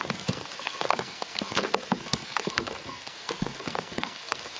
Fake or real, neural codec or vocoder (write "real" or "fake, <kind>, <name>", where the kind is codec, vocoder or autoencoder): fake, codec, SNAC